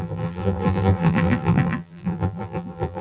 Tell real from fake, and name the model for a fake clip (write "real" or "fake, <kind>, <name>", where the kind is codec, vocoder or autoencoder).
fake, vocoder, BigVGAN v2